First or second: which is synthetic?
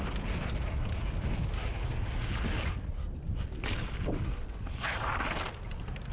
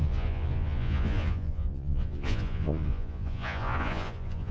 second